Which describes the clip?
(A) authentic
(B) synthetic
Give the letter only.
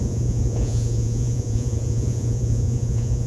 B